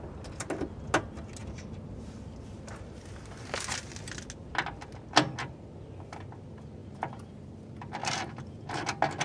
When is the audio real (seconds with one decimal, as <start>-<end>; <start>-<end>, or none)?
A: 0.0-6.8; 7.5-8.0; 8.6-9.2